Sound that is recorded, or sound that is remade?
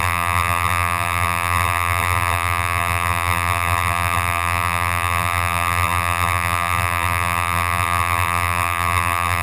remade